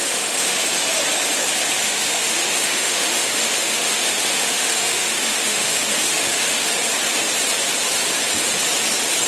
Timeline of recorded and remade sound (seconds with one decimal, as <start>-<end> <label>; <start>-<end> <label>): 0.0-0.6 remade; 0.6-1.8 recorded; 1.8-6.7 remade; 6.7-9.3 recorded